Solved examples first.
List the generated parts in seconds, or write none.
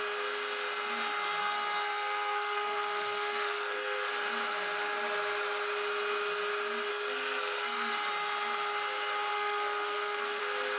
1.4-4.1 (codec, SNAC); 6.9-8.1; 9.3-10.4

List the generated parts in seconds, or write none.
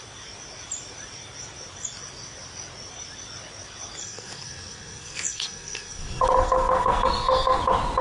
4.0-7.6 (codec, SNAC)